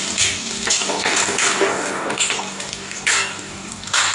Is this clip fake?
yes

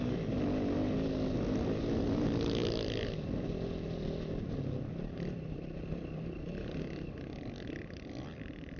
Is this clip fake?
no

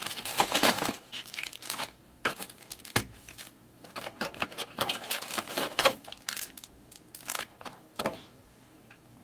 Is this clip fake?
yes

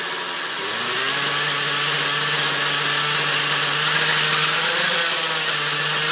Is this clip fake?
no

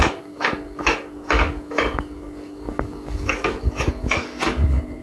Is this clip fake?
yes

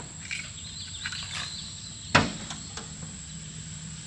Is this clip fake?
no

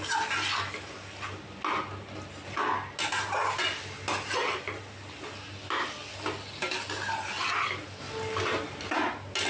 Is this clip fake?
no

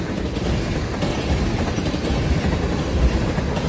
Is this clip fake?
no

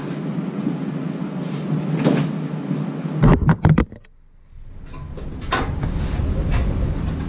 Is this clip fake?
no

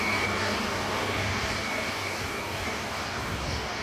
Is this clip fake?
yes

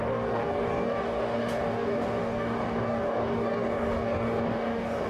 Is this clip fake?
yes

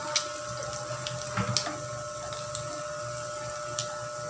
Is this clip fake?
no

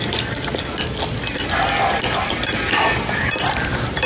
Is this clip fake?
no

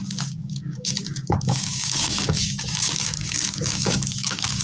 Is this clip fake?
yes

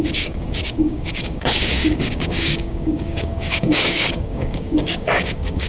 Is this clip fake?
yes